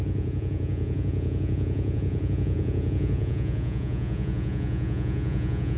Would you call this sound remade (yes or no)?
yes